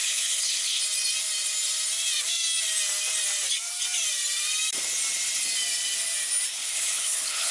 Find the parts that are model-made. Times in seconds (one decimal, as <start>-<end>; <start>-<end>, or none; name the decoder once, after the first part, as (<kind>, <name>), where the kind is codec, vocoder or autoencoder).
0.0-0.8 (codec, HILCodec); 6.5-7.5